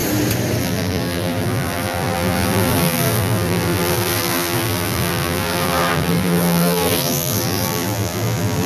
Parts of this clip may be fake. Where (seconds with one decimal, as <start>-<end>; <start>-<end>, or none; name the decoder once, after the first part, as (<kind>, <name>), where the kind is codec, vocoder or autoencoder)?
0.6-8.7 (vocoder, BigVGAN v2)